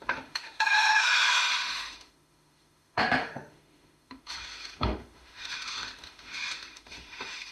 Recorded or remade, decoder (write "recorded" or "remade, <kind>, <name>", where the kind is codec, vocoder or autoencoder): remade, autoencoder, DAC-VAE